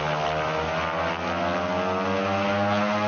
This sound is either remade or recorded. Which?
recorded